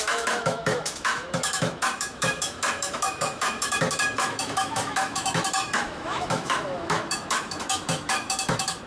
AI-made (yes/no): yes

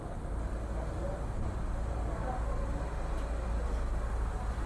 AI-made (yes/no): no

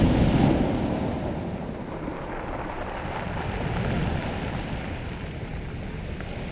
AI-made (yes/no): no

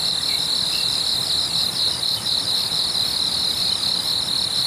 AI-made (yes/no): no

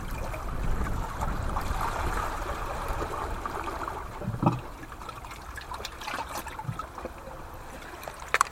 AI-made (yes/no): no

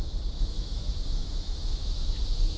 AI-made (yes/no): yes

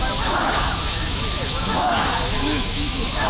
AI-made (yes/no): yes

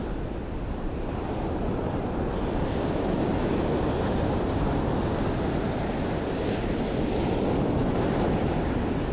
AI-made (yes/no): no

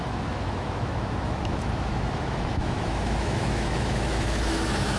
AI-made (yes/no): yes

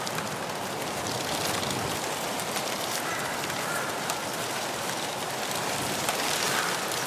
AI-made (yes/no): no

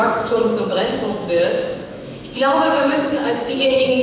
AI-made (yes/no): yes